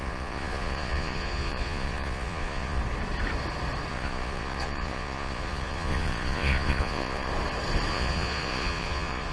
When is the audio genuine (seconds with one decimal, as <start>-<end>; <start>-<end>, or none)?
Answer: 2.8-3.9; 7.3-7.9